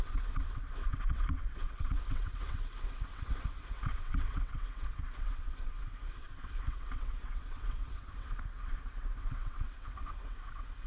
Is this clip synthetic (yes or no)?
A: yes